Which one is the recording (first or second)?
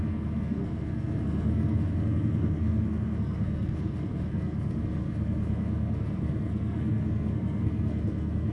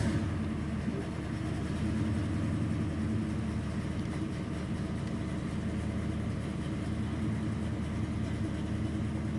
second